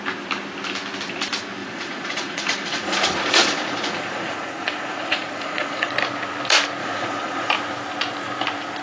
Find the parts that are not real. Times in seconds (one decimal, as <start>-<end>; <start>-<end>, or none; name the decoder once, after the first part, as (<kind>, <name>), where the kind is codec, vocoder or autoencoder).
1.6-5.9 (vocoder, Vocos); 6.8-7.5

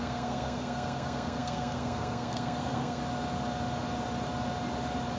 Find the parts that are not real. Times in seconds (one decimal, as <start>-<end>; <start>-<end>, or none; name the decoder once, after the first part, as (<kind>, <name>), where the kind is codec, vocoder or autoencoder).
0.0-3.0 (codec, SNAC)

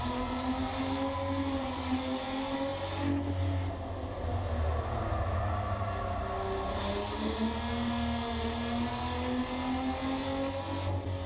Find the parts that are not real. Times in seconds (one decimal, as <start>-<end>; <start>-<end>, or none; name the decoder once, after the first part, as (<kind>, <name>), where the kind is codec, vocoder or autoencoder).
none

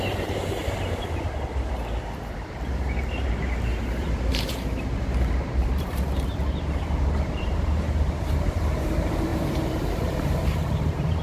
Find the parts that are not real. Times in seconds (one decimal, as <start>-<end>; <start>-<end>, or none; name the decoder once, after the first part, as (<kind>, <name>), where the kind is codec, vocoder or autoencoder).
0.0-0.6 (vocoder, BigVGAN v2); 1.7-11.2

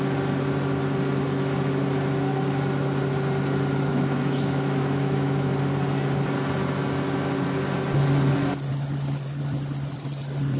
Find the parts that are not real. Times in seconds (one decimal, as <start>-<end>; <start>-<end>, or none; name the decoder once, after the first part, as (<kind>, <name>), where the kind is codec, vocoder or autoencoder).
3.9-5.5 (autoencoder, DAC-VAE)